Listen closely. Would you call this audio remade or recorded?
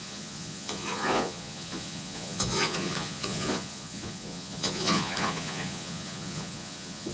remade